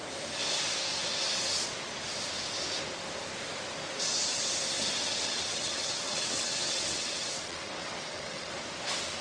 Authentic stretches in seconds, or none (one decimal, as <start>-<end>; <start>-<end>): 0.0-5.0; 8.5-9.2